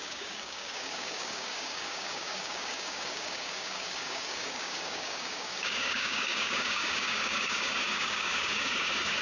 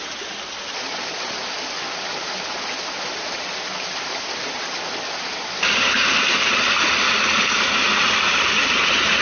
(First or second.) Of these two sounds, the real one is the second